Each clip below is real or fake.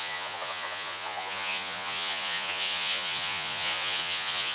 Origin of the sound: fake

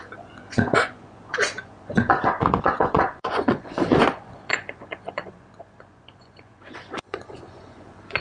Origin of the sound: fake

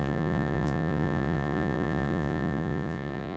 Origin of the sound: fake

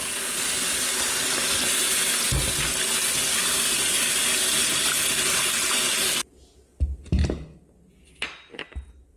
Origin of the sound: real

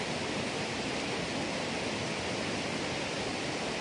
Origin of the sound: real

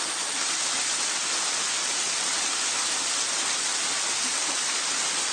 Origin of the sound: real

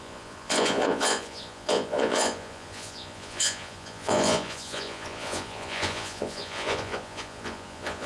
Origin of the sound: fake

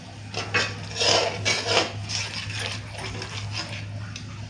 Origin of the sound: real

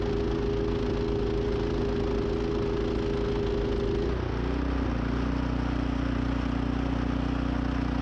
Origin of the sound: real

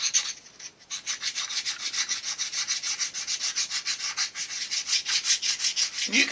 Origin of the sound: real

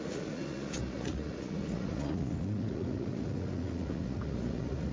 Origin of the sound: fake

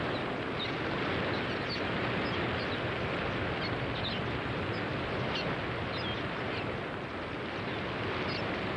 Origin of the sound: real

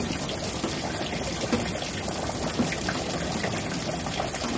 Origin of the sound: real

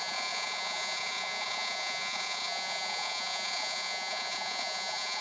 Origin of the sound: fake